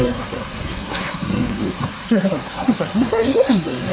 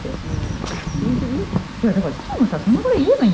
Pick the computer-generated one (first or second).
first